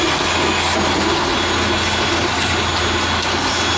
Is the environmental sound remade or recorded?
recorded